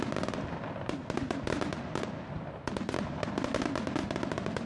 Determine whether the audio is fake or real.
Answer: real